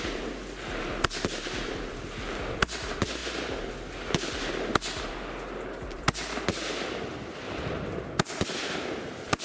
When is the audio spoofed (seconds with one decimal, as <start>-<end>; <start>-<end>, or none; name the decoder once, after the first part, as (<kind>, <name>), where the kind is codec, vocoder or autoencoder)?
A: none